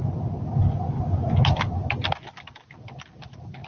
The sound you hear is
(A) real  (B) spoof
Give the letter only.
A